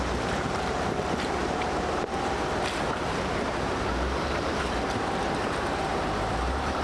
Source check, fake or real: fake